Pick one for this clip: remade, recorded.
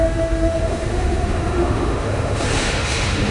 remade